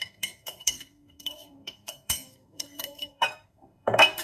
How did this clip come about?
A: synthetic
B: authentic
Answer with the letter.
A